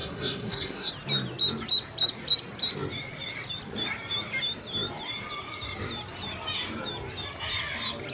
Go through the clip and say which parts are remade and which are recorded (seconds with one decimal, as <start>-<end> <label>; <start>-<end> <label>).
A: 0.0-0.9 remade; 0.9-8.1 recorded